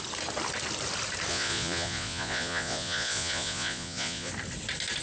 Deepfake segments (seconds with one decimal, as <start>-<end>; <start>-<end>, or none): 1.3-4.3